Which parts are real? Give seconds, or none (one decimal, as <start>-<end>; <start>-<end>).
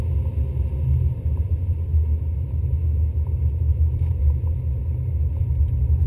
0.0-6.1